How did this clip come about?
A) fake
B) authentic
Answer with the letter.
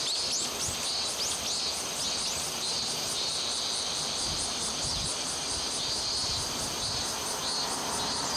B